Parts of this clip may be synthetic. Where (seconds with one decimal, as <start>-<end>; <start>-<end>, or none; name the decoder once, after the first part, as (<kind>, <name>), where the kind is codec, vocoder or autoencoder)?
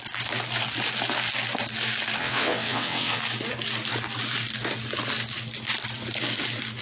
2.2-3.2 (vocoder, WaveNeXt)